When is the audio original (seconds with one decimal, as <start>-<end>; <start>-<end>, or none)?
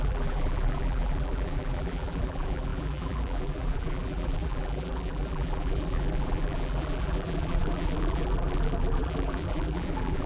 none